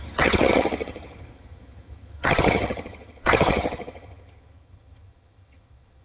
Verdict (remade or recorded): remade